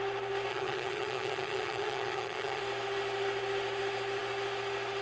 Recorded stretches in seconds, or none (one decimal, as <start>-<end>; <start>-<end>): 0.0-0.5; 2.6-5.0